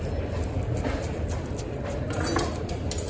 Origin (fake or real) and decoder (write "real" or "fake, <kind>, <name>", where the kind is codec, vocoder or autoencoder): real